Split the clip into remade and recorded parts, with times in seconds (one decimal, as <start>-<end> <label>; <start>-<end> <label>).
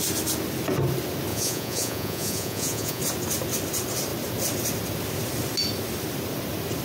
0.0-1.3 recorded; 1.3-3.0 remade; 3.0-6.8 recorded